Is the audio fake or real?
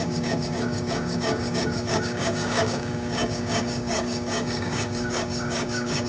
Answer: fake